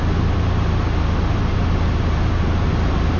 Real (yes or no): yes